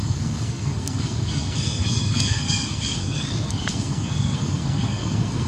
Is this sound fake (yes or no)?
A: yes